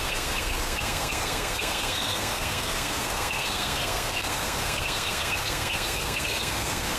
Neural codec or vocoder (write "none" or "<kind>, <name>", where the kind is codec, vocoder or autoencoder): codec, SNAC